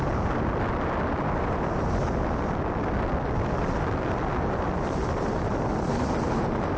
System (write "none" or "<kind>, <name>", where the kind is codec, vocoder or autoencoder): none